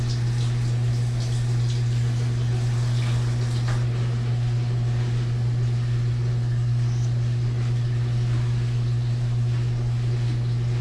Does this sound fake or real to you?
real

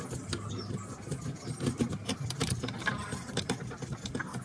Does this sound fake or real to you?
real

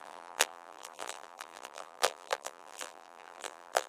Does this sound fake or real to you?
fake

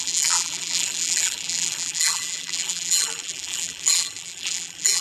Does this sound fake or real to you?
fake